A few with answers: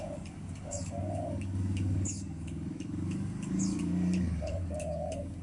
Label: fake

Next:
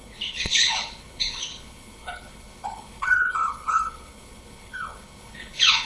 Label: fake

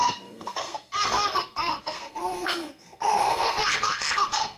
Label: fake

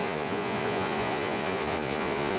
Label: fake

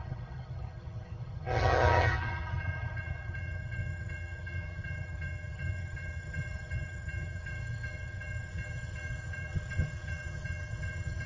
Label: fake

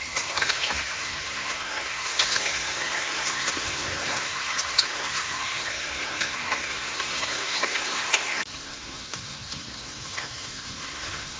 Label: fake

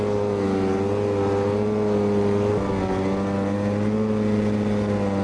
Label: real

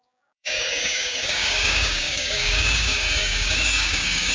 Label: fake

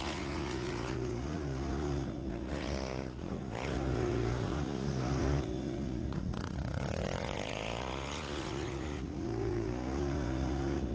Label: fake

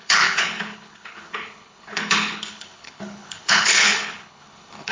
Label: fake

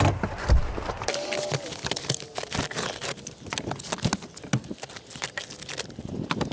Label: real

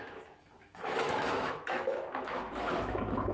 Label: fake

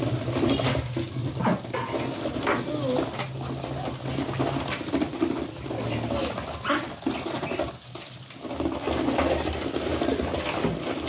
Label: real